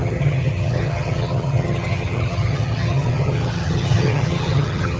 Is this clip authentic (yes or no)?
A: no